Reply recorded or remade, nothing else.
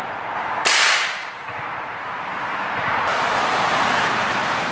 remade